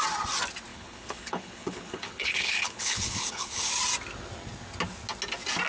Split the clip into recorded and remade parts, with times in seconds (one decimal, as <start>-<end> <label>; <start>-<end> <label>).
0.0-0.7 recorded; 0.7-3.7 remade; 3.7-5.7 recorded

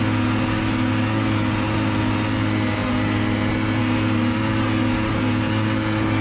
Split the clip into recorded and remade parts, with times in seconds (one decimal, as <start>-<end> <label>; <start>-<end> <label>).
0.0-6.2 recorded

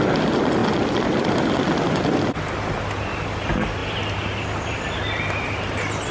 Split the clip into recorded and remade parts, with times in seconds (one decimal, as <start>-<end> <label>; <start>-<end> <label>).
0.0-6.1 recorded